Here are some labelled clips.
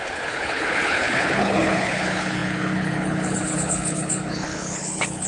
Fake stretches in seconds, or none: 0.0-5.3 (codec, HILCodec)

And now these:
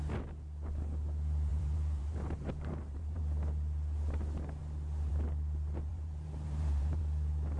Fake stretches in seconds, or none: 1.5-3.2 (vocoder, BigVGAN v2); 5.9-7.0

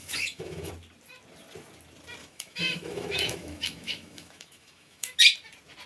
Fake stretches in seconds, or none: 0.0-0.7 (autoencoder, DAC-VAE); 2.2-5.2

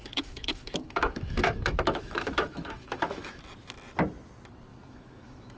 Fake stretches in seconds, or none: 0.0-3.4 (autoencoder, DAC-VAE); 4.7-5.6

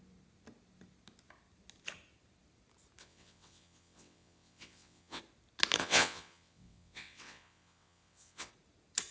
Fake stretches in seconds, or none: 3.0-5.2 (vocoder, WaveNeXt); 5.8-8.5

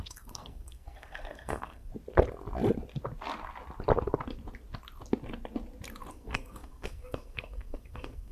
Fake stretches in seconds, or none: 0.0-1.9 (codec, SNAC); 6.1-8.3

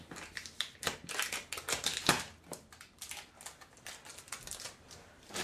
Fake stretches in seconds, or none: none

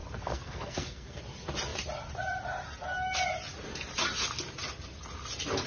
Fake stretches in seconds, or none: 0.0-1.2 (codec, SNAC)